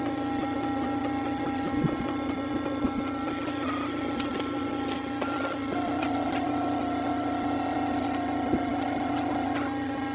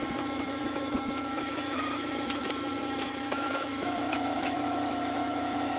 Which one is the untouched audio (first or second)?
first